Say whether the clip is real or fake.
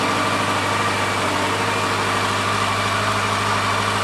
real